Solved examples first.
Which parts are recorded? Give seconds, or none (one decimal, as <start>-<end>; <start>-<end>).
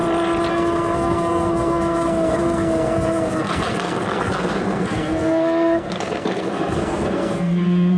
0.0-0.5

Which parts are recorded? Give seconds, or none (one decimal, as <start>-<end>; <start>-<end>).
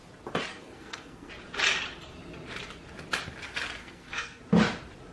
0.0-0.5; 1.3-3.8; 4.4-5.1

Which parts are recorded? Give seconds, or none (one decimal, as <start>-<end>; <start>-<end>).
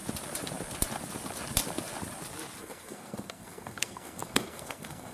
0.0-2.6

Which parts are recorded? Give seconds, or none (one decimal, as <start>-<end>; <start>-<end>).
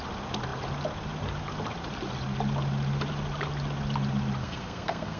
0.0-4.4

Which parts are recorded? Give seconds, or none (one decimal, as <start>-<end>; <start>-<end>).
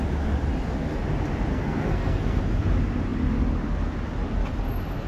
0.0-1.5; 2.4-5.1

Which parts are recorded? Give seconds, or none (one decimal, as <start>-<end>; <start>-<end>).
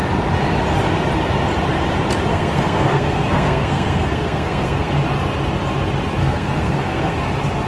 0.0-2.3; 4.9-6.2; 7.3-7.7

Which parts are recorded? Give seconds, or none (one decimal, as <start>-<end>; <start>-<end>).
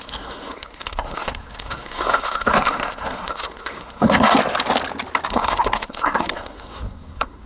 4.4-5.3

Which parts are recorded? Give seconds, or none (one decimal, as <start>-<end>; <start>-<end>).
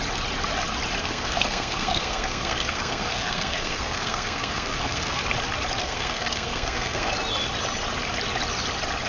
0.0-1.0; 5.2-5.8; 7.1-9.1